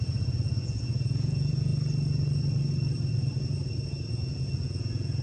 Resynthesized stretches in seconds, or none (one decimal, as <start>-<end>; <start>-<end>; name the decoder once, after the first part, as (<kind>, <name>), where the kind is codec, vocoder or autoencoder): 0.0-1.7 (vocoder, Vocos); 4.1-5.2